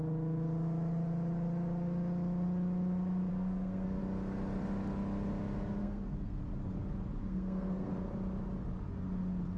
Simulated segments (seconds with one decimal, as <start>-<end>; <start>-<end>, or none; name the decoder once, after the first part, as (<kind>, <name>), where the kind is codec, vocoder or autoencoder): 3.3-4.0 (codec, SNAC); 5.8-6.4; 7.2-7.9